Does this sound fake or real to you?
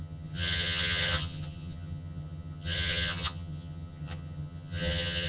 fake